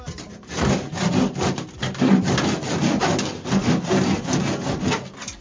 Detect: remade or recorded recorded